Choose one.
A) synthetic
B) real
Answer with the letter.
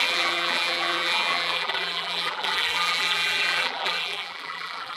A